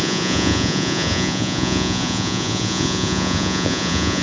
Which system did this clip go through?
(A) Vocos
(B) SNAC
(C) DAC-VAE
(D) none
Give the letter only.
A